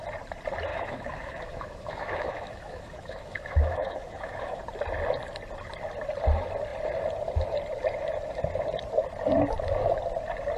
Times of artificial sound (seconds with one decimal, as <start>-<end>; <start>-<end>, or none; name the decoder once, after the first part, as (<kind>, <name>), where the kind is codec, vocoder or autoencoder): 0.7-4.6 (autoencoder, DAC-VAE)

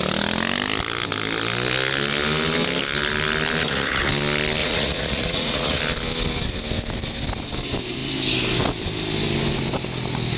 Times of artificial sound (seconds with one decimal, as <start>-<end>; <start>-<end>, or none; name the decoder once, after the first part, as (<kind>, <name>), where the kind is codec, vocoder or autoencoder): 3.6-4.1 (vocoder, Vocos); 4.6-5.8

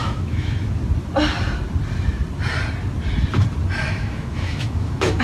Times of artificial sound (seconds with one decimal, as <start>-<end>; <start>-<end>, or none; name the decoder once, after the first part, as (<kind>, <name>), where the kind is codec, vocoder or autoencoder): 0.0-0.8 (autoencoder, DAC-VAE); 3.9-5.2

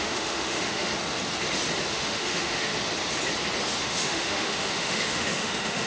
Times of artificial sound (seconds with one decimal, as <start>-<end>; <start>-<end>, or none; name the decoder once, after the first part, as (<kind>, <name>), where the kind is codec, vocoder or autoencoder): 0.0-0.9 (autoencoder, DAC-VAE); 1.9-2.7; 3.8-5.9

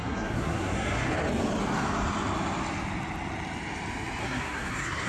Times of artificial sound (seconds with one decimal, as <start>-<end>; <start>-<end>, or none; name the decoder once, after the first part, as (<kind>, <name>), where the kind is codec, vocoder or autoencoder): 0.0-1.1 (codec, SNAC); 4.2-5.1